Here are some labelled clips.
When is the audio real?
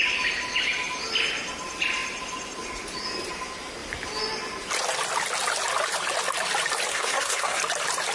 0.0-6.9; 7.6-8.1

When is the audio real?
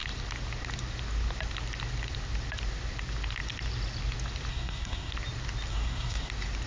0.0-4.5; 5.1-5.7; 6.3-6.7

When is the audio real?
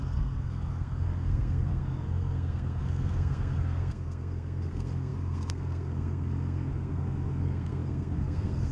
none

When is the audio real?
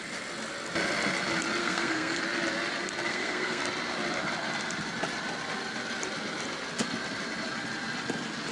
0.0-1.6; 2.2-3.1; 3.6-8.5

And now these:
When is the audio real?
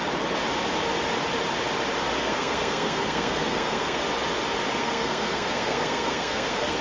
0.0-2.2; 4.0-4.8